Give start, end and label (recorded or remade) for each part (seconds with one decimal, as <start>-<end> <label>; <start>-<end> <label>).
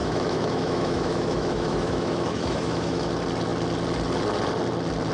0.0-3.1 remade; 3.1-5.1 recorded